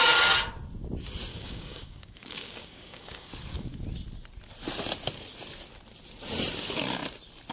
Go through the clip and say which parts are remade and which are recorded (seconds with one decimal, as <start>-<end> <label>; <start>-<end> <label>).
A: 0.0-1.3 recorded; 1.3-3.3 remade; 3.3-7.5 recorded